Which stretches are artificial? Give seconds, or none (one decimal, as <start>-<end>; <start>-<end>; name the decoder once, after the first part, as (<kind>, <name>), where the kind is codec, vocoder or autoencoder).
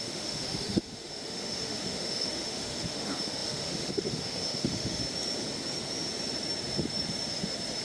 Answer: 0.0-5.0 (autoencoder, DAC-VAE)